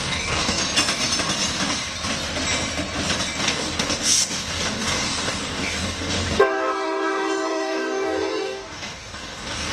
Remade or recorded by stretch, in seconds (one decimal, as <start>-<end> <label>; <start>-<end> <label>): 0.0-0.6 remade; 0.6-3.4 recorded; 3.4-9.7 remade

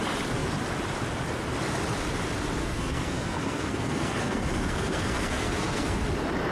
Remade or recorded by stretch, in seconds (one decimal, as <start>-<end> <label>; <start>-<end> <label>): 0.0-2.6 recorded; 2.6-6.0 remade; 6.0-6.5 recorded

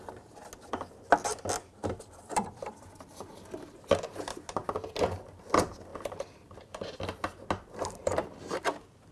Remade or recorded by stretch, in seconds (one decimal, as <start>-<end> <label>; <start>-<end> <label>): 0.0-5.9 recorded; 5.9-7.0 remade; 7.0-8.0 recorded; 8.0-8.6 remade; 8.6-9.1 recorded

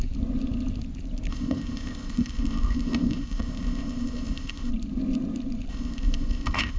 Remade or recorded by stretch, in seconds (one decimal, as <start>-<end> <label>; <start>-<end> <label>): 0.0-1.3 recorded; 1.3-4.7 remade; 4.7-5.7 recorded; 5.7-6.8 remade

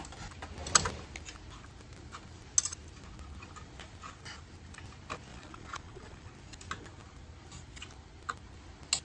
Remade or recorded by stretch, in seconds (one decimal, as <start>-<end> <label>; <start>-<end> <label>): 0.0-5.3 recorded; 5.3-6.3 remade; 6.3-9.0 recorded